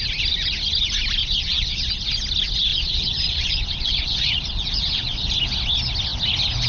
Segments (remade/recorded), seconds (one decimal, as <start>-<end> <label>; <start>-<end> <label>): 0.0-1.2 recorded; 1.2-2.0 remade; 2.0-2.7 recorded; 2.7-5.3 remade; 5.3-6.7 recorded